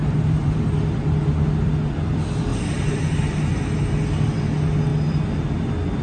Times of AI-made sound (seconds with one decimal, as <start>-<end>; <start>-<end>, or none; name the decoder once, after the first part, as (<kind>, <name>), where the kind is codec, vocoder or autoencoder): 0.0-0.7 (vocoder, BigVGAN v2); 2.5-3.0